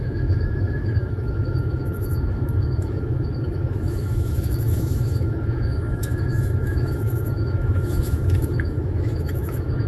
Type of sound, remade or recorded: remade